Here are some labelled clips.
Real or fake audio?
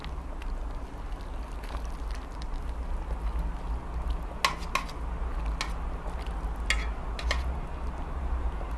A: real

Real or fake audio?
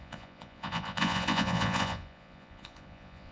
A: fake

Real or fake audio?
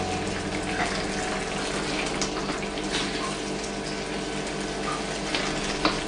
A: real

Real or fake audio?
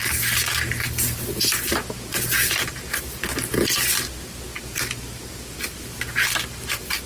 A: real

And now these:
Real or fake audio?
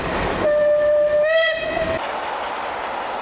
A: real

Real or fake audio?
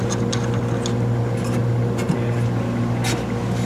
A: real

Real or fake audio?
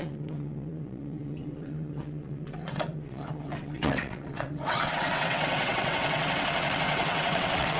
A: fake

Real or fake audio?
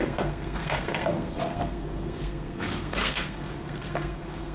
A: fake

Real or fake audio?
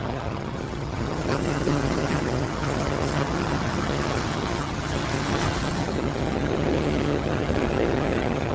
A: fake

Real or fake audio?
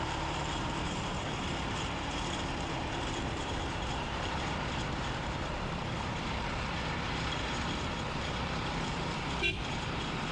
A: fake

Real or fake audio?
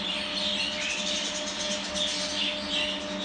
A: real